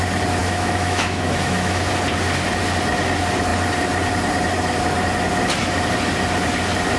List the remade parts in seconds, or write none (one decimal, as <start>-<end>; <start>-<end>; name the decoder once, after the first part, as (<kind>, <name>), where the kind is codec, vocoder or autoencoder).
0.4-1.9 (autoencoder, DAC-VAE)